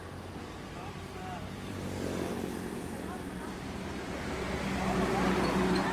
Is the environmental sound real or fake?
fake